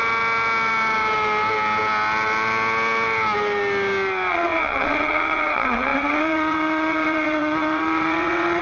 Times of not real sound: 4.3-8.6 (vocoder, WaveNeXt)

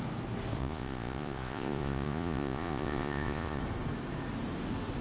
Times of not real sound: 0.6-3.6 (vocoder, Vocos)

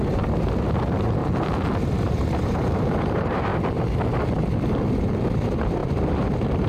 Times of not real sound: 0.0-1.2 (vocoder, BigVGAN v2); 1.8-3.5; 5.0-6.7

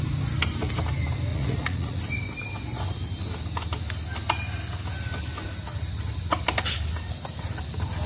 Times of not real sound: 1.3-2.0 (vocoder, Vocos)

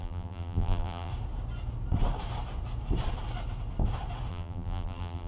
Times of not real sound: 0.0-1.1 (vocoder, BigVGAN v2); 4.3-5.3

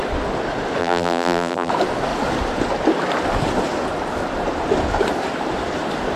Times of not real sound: 0.8-1.7 (vocoder, BigVGAN v2)

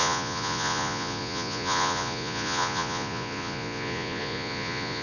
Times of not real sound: 0.0-5.0 (vocoder, Vocos)